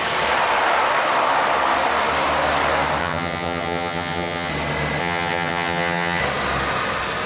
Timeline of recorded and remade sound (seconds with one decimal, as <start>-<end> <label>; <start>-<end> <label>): 0.0-3.0 recorded; 3.0-4.5 remade; 4.5-5.0 recorded; 5.0-6.2 remade; 6.2-7.3 recorded